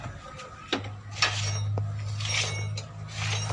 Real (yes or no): yes